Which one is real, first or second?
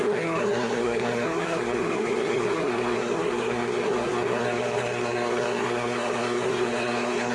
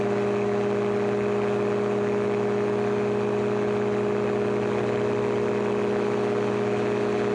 second